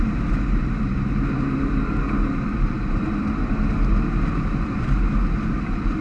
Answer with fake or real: fake